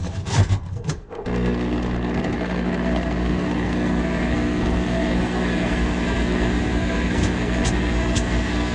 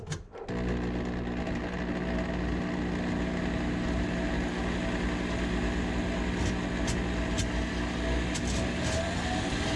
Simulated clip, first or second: first